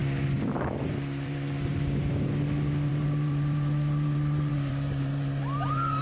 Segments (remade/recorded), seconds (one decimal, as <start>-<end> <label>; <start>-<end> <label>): 0.0-0.9 recorded; 0.9-1.7 remade; 1.7-2.9 recorded; 2.9-6.0 remade